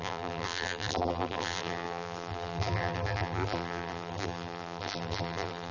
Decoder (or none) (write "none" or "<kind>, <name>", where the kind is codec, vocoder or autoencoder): vocoder, BigVGAN v2